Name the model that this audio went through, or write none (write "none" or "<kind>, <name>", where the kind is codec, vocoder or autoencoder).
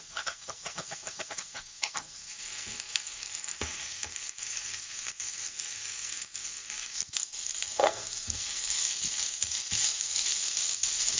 codec, SNAC